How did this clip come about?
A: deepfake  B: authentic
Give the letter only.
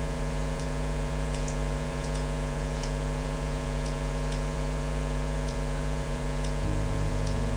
A